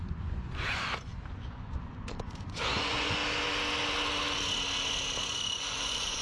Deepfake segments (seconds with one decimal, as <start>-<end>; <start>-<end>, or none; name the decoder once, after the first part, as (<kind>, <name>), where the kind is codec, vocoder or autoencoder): 0.0-3.2 (vocoder, Vocos); 5.2-6.2